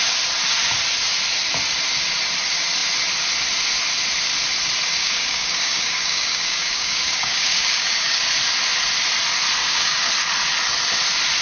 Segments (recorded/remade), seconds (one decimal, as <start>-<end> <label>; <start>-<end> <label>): 0.0-5.0 recorded; 5.0-8.2 remade; 8.2-9.6 recorded; 9.6-10.1 remade; 10.1-11.4 recorded